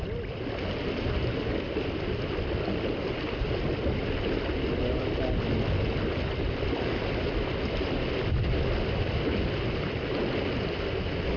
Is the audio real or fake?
real